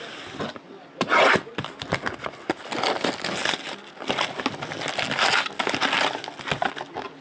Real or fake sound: real